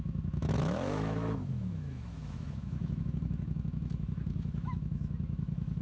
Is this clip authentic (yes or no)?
no